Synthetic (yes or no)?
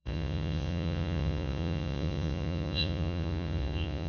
yes